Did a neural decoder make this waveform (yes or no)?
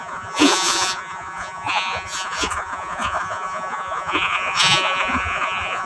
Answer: yes